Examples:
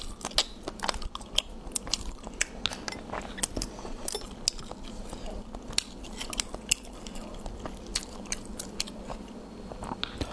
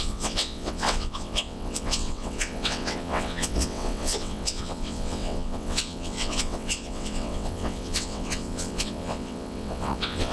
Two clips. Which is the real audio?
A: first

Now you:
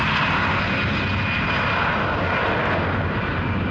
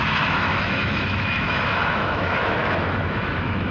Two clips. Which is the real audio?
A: first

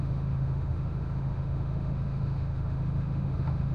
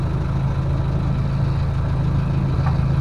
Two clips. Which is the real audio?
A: second